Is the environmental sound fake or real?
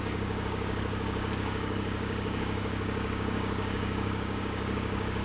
fake